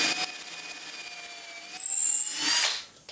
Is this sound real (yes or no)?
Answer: yes